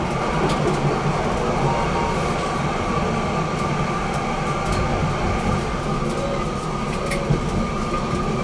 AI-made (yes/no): no